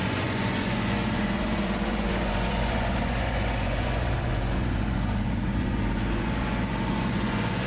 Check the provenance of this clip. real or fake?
fake